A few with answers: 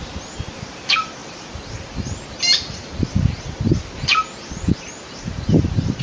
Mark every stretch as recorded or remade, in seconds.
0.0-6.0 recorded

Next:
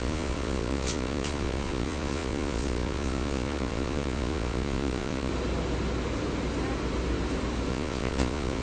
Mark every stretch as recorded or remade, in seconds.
0.0-5.3 remade; 5.3-7.7 recorded; 7.7-8.6 remade

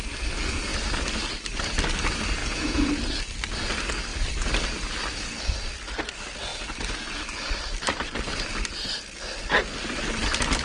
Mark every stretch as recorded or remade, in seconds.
0.0-2.4 recorded; 2.4-2.9 remade; 2.9-10.6 recorded

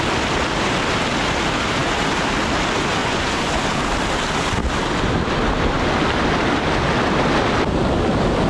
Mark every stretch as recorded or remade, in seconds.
0.0-3.0 recorded; 3.0-3.6 remade; 3.6-8.5 recorded

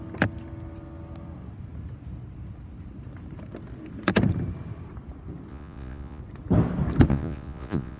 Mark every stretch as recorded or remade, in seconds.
0.0-5.5 recorded; 5.5-6.2 remade; 6.2-7.1 recorded; 7.1-8.0 remade

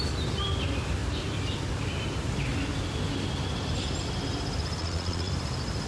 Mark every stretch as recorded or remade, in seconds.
0.0-4.8 recorded; 4.8-5.3 remade; 5.3-5.9 recorded

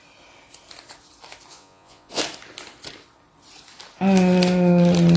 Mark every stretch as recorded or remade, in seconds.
0.0-1.5 recorded; 1.5-2.2 remade; 2.2-5.2 recorded

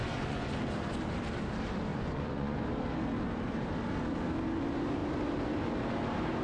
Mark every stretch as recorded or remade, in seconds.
0.0-0.5 remade; 0.5-1.9 recorded; 1.9-2.6 remade; 2.6-6.4 recorded